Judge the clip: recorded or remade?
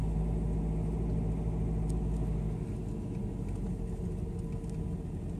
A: recorded